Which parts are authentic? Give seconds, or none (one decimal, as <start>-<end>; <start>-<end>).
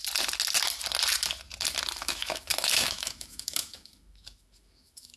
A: 0.0-2.0